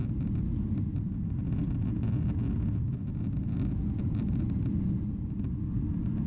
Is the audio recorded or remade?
recorded